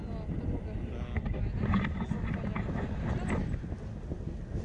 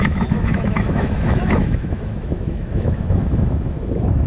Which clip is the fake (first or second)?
second